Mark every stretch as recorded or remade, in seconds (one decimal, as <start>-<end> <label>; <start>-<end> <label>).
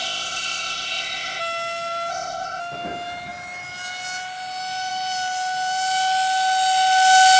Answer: 0.0-1.4 remade; 1.4-2.1 recorded; 2.1-2.6 remade; 2.6-7.4 recorded